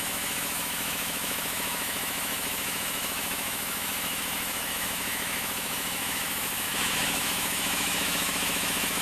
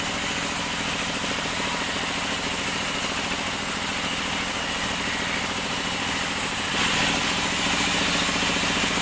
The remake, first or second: first